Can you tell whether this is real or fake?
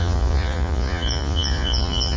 fake